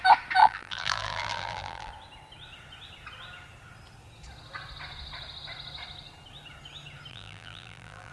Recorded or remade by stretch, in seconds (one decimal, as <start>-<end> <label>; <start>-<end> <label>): 0.0-0.4 recorded; 0.4-1.9 remade; 1.9-7.1 recorded; 7.1-8.1 remade